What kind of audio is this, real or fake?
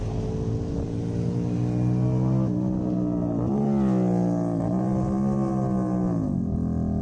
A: real